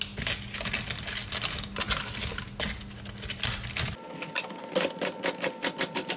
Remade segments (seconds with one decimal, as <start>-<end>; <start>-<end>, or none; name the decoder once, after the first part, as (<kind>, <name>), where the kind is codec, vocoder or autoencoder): none